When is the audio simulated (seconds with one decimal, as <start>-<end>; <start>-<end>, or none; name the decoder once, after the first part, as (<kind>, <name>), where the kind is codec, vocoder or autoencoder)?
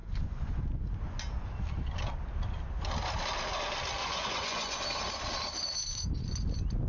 0.0-1.2 (vocoder, Vocos); 4.0-4.8